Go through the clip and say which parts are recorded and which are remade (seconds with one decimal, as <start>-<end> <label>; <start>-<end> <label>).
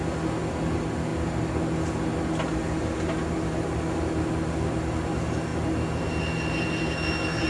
0.0-7.5 recorded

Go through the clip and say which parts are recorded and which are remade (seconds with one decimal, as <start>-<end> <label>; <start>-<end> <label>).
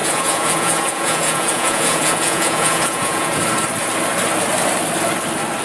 0.0-3.4 remade; 3.4-5.6 recorded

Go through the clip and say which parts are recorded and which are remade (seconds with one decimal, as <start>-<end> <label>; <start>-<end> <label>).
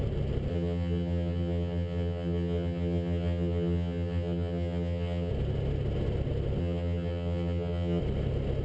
0.0-0.5 recorded; 0.5-5.3 remade; 5.3-6.6 recorded; 6.6-8.0 remade; 8.0-8.6 recorded